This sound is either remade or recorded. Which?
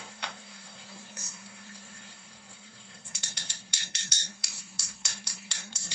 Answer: remade